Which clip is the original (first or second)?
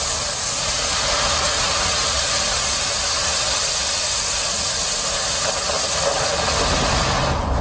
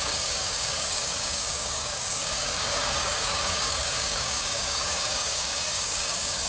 first